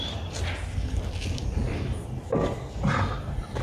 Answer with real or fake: fake